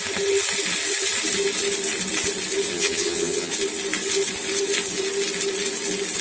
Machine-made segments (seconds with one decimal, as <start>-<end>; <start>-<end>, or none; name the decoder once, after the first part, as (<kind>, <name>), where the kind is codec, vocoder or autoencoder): 2.7-3.5 (vocoder, HiFi-GAN)